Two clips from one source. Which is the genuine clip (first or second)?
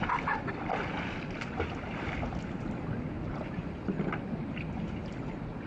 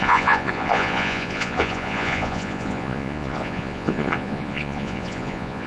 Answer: first